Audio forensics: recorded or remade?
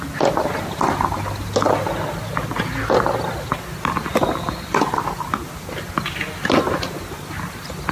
recorded